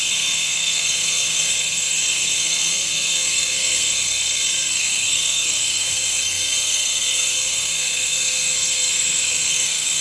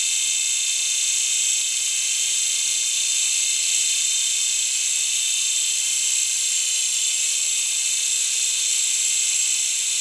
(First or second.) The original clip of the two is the second